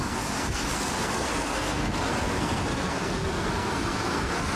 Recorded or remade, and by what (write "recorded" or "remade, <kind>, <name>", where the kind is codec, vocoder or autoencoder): remade, codec, SNAC